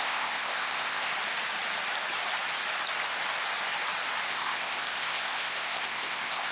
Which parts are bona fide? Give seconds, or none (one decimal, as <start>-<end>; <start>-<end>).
1.1-4.3